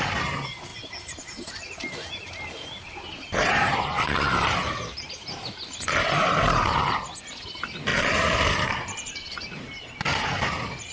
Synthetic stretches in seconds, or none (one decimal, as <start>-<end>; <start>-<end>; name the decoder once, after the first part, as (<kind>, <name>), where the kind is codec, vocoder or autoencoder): 0.7-5.1 (vocoder, BigVGAN v2); 7.9-9.8